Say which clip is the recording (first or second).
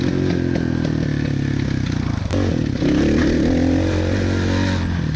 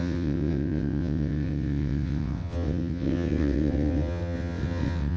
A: first